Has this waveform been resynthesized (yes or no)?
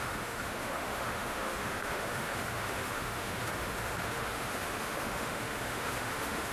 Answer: yes